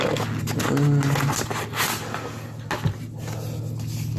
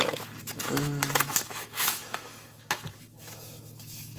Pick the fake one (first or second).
second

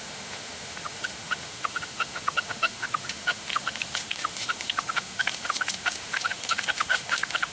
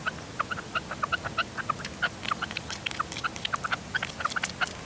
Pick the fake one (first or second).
first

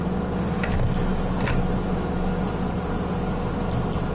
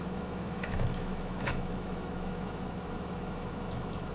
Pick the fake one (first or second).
second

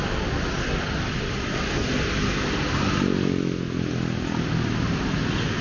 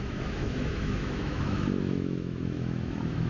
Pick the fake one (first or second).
second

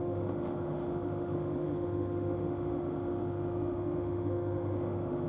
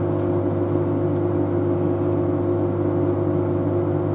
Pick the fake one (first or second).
first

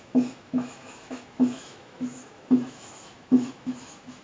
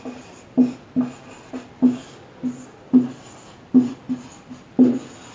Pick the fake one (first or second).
first